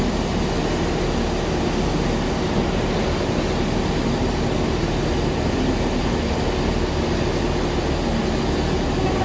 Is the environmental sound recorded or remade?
recorded